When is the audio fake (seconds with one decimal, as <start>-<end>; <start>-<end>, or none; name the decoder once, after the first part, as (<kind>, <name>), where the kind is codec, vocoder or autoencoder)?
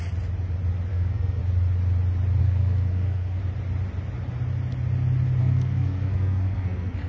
0.9-1.4 (codec, SNAC); 2.4-3.4; 5.4-7.1